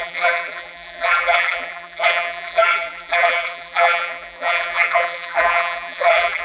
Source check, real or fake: fake